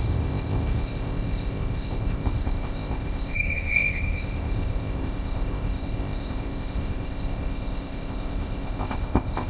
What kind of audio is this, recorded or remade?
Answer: remade